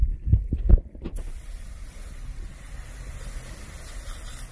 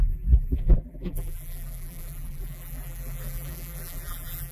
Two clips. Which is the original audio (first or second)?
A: first